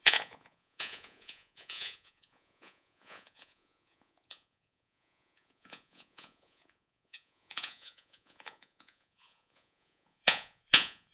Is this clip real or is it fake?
fake